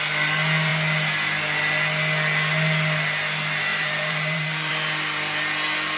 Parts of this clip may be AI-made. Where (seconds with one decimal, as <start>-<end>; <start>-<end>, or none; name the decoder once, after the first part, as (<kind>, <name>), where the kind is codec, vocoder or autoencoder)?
3.7-4.7 (vocoder, BigVGAN v2)